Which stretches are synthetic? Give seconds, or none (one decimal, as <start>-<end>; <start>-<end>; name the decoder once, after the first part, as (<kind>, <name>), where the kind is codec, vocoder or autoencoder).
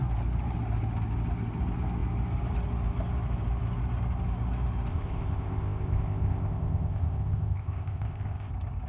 4.9-8.5 (codec, ZipCodec)